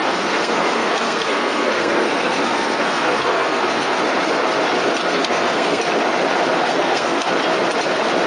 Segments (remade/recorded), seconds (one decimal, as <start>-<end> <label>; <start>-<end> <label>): 0.0-4.0 remade; 4.0-5.0 recorded; 5.0-5.8 remade; 5.8-6.7 recorded; 6.7-7.3 remade; 7.3-8.3 recorded